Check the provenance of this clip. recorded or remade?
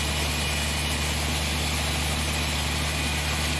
recorded